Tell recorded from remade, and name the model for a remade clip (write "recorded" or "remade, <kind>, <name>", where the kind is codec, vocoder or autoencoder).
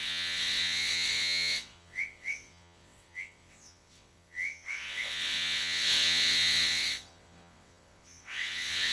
remade, vocoder, WaveNeXt